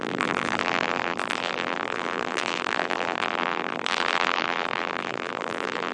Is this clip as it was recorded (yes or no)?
no